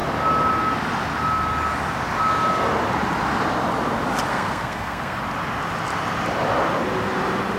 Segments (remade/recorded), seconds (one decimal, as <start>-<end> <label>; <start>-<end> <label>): 0.0-4.3 recorded; 4.3-5.2 remade; 5.2-7.6 recorded